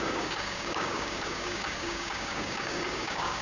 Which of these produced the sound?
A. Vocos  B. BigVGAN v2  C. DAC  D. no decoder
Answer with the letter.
C